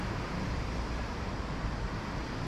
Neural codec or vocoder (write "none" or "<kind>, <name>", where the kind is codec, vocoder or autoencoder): vocoder, BigVGAN v2